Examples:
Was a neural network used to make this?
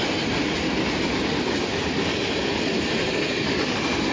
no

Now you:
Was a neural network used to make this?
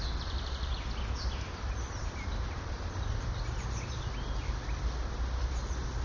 no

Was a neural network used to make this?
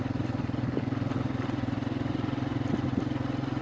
no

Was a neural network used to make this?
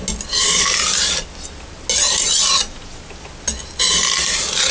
no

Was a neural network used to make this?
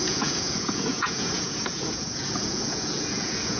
yes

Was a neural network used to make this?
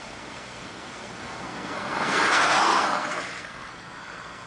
yes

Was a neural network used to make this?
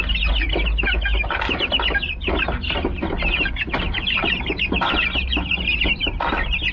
no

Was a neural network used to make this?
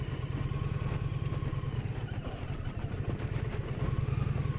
no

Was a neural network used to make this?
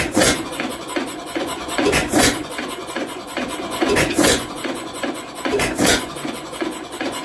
yes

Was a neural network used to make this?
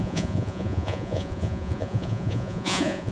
yes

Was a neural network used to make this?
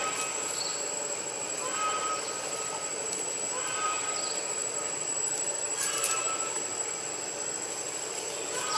no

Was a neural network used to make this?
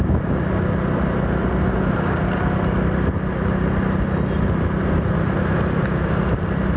no